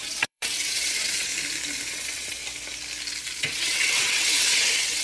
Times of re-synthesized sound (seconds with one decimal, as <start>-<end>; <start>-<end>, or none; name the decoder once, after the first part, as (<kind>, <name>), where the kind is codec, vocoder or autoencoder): 0.0-1.3 (vocoder, WaveNeXt); 1.9-2.4; 3.4-5.0